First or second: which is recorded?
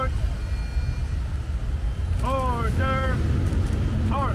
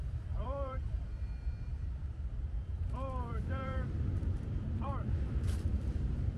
first